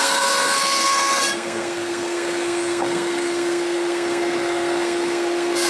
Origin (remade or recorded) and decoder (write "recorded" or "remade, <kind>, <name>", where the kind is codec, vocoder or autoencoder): remade, codec, SNAC